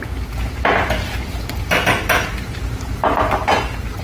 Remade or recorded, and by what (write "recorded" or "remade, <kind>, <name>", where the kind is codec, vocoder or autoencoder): recorded